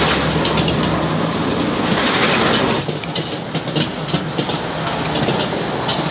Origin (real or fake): real